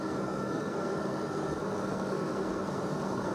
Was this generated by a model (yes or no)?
yes